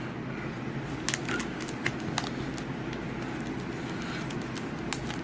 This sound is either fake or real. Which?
real